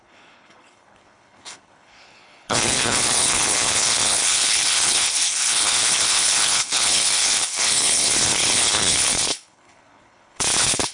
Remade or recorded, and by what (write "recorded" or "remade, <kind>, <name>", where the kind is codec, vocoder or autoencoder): remade, codec, HILCodec